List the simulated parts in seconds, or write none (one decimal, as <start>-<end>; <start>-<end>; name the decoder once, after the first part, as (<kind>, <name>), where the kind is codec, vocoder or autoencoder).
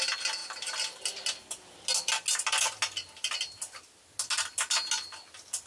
none